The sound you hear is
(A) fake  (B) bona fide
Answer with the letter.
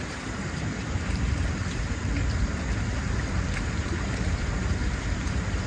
A